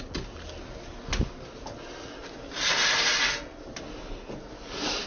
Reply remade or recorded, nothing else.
recorded